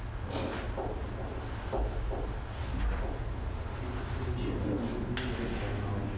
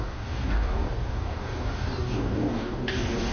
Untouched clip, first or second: first